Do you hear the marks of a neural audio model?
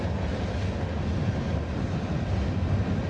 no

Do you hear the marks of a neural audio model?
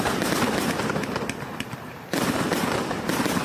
no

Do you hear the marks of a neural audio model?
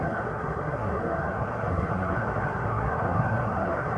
yes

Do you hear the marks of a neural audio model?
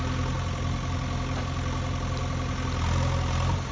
no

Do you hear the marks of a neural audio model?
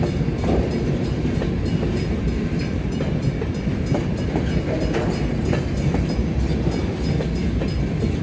yes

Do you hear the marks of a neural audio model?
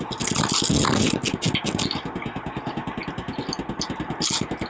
no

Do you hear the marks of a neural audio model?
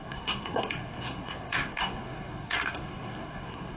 yes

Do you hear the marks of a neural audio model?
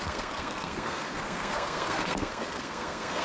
yes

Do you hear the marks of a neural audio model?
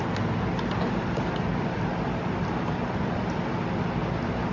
no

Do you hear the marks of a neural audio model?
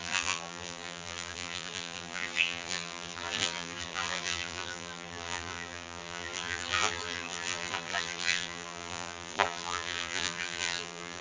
yes